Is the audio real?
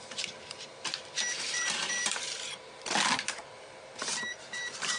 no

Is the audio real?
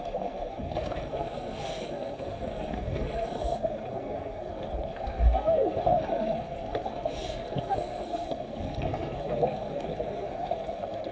no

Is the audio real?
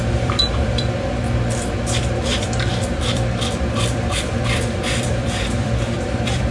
no